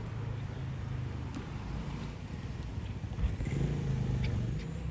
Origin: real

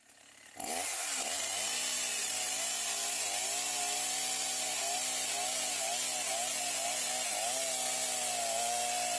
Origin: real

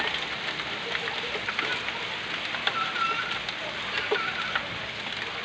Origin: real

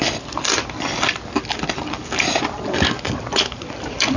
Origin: real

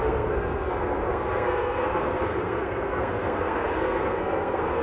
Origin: fake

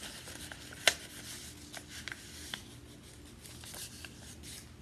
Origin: real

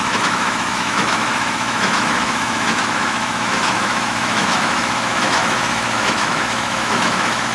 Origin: fake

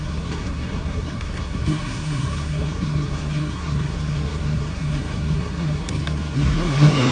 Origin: fake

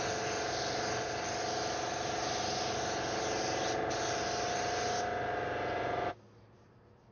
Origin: real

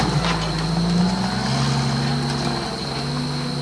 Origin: real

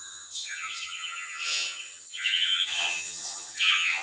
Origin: fake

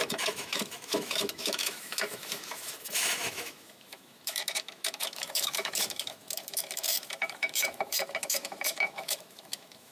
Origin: fake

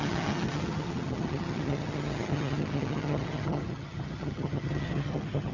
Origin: fake